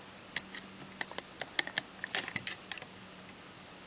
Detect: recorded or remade recorded